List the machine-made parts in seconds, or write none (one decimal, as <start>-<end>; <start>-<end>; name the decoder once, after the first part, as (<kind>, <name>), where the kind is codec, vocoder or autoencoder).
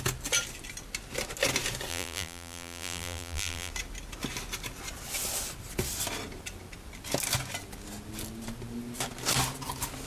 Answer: 1.9-3.7 (vocoder, BigVGAN v2)